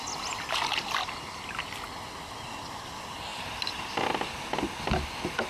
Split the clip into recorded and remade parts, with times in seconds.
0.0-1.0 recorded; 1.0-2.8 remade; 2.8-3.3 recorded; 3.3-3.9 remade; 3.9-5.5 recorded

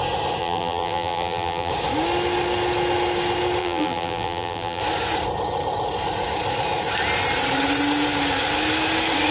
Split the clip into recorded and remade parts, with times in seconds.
0.0-0.4 recorded; 0.4-1.7 remade; 1.7-3.6 recorded; 3.6-4.8 remade; 4.8-9.3 recorded

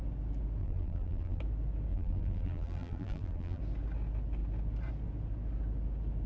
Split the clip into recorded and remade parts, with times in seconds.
0.0-0.6 recorded; 0.6-1.4 remade; 1.4-1.9 recorded; 1.9-3.6 remade; 3.6-6.3 recorded

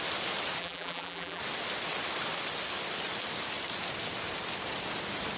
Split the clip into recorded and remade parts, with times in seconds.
0.0-0.6 recorded; 0.6-1.4 remade; 1.4-5.4 recorded

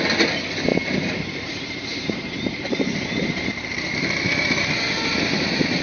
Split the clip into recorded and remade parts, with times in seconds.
0.0-0.7 recorded; 0.7-4.2 remade; 4.2-5.8 recorded

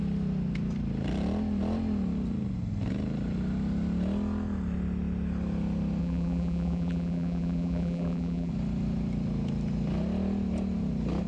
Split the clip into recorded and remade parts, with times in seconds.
0.0-6.0 recorded; 6.0-8.5 remade; 8.5-11.3 recorded

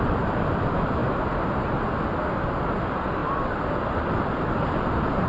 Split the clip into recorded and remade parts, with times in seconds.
0.0-3.2 recorded; 3.2-5.3 remade